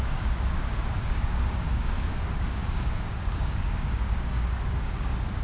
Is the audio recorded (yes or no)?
no